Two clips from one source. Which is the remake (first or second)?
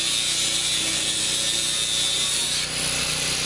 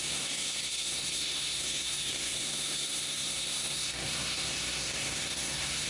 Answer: second